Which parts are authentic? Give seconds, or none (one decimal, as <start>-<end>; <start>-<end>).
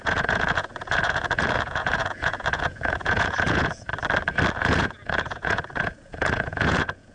3.9-4.5